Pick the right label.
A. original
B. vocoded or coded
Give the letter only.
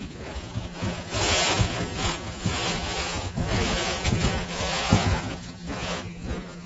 B